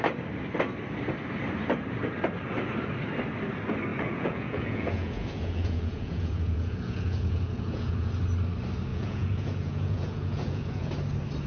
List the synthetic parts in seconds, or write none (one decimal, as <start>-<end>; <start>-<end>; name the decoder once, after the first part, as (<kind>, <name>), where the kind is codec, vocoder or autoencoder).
3.9-8.1 (vocoder, Vocos); 8.9-10.9